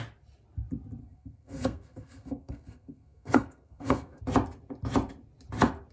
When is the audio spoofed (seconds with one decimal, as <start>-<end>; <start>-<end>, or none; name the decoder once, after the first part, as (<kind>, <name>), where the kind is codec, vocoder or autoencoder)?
1.0-4.2 (codec, SNAC)